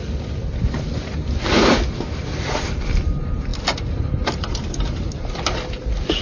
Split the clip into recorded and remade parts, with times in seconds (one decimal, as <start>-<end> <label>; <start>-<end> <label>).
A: 0.0-6.2 recorded